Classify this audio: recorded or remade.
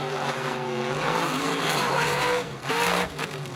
remade